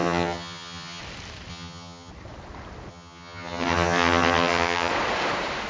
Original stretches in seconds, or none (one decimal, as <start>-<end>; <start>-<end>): 1.0-1.5; 2.1-2.9; 4.9-5.7